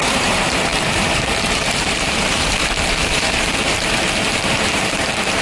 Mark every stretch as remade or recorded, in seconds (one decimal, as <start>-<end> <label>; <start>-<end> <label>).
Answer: 0.0-5.4 remade